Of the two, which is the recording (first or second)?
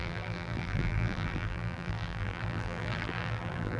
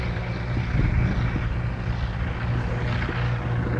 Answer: second